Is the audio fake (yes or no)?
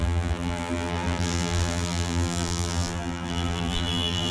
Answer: yes